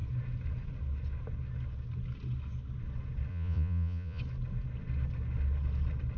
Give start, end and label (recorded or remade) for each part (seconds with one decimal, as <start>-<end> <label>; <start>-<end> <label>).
0.0-3.3 recorded; 3.3-4.2 remade; 4.2-6.2 recorded